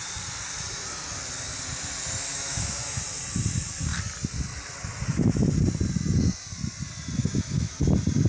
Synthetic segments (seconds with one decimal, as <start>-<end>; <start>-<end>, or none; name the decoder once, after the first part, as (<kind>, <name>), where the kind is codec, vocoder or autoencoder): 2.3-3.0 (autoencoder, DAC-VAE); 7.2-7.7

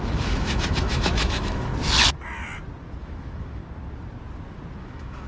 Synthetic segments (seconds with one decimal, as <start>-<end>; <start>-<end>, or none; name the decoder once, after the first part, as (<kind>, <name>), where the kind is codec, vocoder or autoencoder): 0.0-1.7 (autoencoder, DAC-VAE); 3.0-3.6; 4.8-5.3

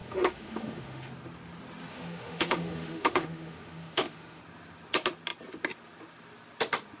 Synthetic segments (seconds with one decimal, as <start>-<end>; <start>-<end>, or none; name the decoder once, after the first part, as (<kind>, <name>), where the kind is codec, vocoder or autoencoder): 0.0-1.1 (autoencoder, DAC-VAE); 1.9-4.4

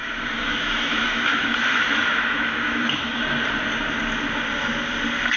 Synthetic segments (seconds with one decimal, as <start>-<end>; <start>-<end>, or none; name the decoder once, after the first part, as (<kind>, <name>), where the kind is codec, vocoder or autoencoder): 0.0-3.2 (autoencoder, DAC-VAE)

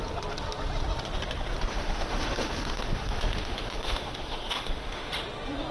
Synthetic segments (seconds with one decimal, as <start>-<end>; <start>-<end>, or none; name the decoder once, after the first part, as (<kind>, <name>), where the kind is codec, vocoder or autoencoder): 1.7-5.1 (autoencoder, DAC-VAE)

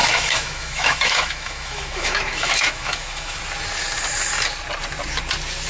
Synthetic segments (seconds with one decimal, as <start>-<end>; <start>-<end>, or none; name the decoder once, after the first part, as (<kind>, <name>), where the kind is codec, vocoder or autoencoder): 0.0-3.4 (autoencoder, DAC-VAE)